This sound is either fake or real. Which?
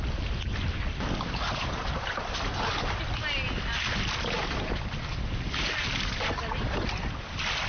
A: real